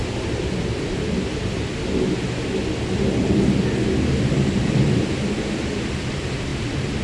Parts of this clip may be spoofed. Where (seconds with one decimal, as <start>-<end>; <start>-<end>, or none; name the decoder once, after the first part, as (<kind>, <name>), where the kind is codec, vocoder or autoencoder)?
0.6-1.7 (vocoder, BigVGAN v2); 5.4-7.0